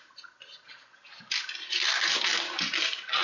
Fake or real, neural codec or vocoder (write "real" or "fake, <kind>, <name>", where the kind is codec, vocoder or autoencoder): real